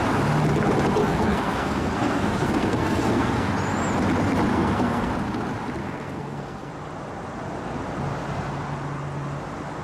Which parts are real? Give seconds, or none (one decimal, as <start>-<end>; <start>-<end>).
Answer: 0.0-1.0; 3.5-4.5; 5.1-5.8; 6.7-9.8

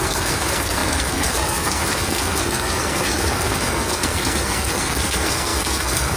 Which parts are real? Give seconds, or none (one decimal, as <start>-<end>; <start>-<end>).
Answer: none

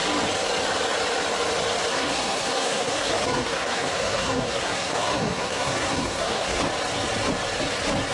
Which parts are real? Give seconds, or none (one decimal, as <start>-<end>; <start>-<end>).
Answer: 0.0-1.9; 6.6-8.1

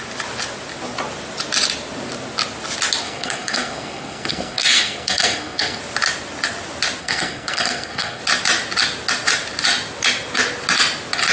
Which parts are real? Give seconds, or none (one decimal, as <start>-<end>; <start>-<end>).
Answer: 0.0-3.0; 5.8-7.0; 8.2-11.3